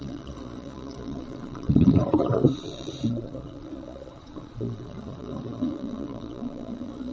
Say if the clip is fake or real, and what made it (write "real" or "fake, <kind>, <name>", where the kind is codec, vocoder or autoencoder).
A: fake, vocoder, Vocos